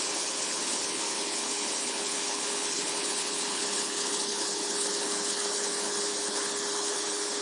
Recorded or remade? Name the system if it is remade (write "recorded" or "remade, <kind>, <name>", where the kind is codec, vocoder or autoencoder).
remade, codec, HILCodec